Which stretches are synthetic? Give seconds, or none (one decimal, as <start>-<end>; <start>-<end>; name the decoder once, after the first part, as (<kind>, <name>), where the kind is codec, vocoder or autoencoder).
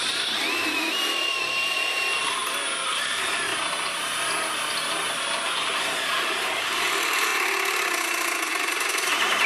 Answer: 0.0-2.4 (vocoder, BigVGAN v2); 3.1-3.5; 6.2-7.3; 8.5-9.5